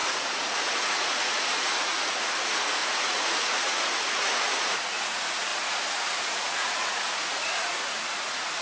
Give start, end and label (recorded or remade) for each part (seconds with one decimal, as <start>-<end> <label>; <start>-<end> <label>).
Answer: 0.0-8.6 remade

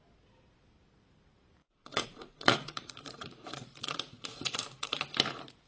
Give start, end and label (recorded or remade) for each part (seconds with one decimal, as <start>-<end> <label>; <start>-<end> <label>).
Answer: 0.0-1.6 recorded; 1.6-5.0 remade; 5.0-5.7 recorded

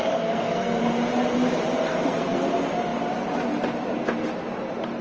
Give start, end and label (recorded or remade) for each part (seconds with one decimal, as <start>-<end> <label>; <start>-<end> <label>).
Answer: 0.0-0.8 remade; 0.8-1.9 recorded; 1.9-2.5 remade; 2.5-5.0 recorded